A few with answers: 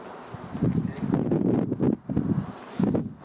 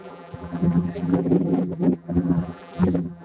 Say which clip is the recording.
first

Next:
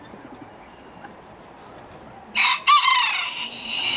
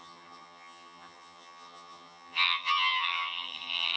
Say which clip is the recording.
first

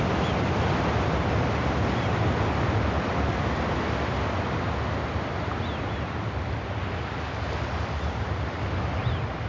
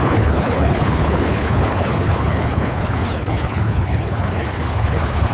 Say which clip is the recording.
first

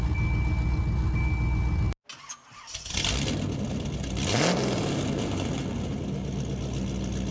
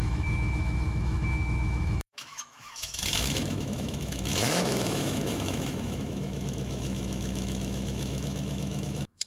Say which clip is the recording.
first